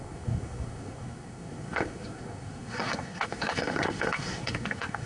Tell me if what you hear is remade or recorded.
remade